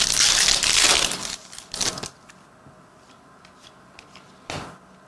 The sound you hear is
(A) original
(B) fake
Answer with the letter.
A